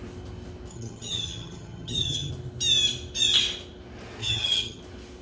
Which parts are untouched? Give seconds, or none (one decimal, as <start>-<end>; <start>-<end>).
0.0-0.7; 2.3-4.2; 4.8-5.2